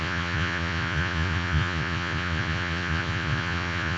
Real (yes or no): no